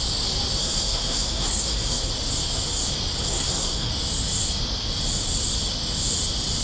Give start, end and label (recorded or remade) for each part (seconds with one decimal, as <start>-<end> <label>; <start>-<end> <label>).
0.0-0.6 recorded; 0.6-2.1 remade; 2.1-3.2 recorded; 3.2-3.9 remade; 3.9-6.6 recorded